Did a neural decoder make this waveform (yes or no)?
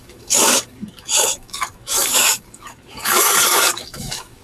yes